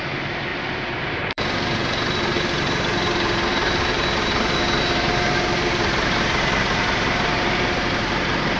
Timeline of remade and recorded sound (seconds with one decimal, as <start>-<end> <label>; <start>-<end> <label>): 0.0-8.6 remade